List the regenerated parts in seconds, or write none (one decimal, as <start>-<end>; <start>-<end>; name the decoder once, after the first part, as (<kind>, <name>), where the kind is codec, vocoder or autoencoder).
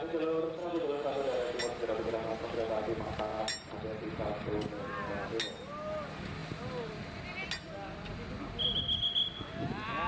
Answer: 0.6-1.6 (codec, DAC)